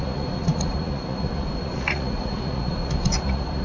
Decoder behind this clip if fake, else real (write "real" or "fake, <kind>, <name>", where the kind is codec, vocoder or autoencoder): fake, vocoder, Vocos